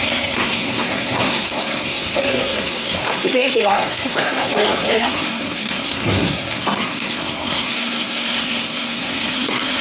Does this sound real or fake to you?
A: fake